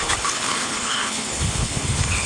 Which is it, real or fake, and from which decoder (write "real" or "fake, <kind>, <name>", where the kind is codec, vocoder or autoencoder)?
fake, codec, HILCodec